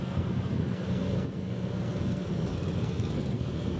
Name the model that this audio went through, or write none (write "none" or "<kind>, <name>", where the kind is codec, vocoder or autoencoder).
codec, SNAC